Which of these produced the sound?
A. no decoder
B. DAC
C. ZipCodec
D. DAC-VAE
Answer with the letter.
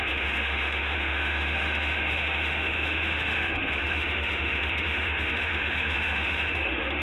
D